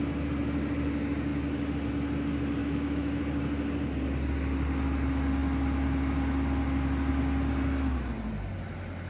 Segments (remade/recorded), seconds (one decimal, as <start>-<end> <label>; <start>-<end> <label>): 0.0-2.6 recorded; 2.6-3.2 remade; 3.2-9.1 recorded